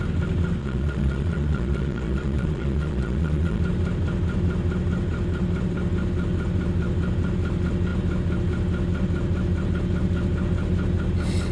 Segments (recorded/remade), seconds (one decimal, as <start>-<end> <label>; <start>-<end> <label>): 0.0-0.6 recorded; 0.6-3.6 remade; 3.6-11.5 recorded